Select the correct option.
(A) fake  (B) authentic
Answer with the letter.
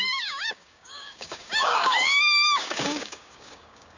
A